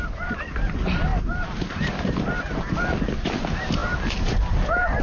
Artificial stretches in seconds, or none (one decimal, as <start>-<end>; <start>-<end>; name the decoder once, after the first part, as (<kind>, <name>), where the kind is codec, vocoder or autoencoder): none